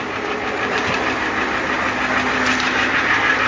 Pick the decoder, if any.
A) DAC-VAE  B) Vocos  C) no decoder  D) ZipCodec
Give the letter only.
C